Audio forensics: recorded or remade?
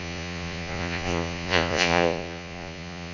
remade